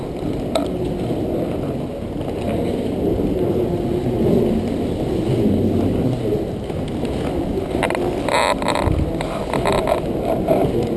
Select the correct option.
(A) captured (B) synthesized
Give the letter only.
A